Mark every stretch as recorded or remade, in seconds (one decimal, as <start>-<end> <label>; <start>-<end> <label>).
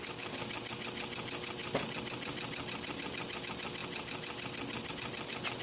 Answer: 0.0-1.6 recorded; 1.6-3.4 remade; 3.4-3.8 recorded; 3.8-4.9 remade; 4.9-5.6 recorded